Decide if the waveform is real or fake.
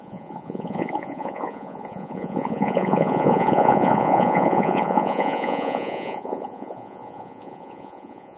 fake